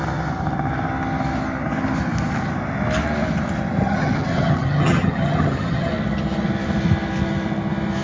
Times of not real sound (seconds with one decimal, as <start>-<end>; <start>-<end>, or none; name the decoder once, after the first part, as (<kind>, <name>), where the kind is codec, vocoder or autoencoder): 3.8-5.9 (vocoder, HiFi-GAN)